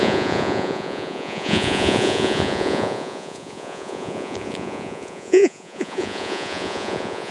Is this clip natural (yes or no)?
no